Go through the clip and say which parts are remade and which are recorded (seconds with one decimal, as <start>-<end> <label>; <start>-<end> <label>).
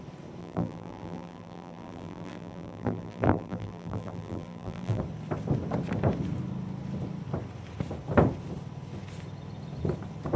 0.0-0.4 recorded; 0.4-5.0 remade; 5.0-10.4 recorded